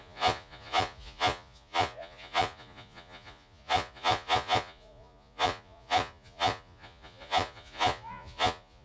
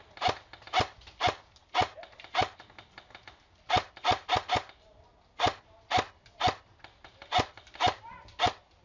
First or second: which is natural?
second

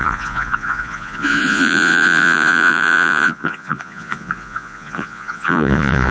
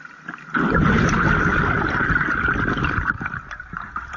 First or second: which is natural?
second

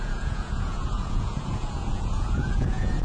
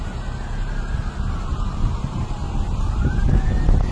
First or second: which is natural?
second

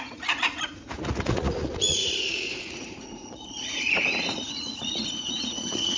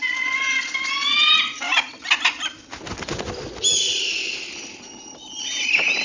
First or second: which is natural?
second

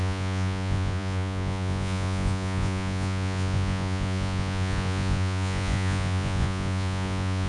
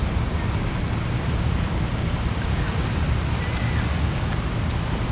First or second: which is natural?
second